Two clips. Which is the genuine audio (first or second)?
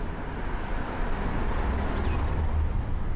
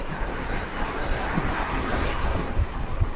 first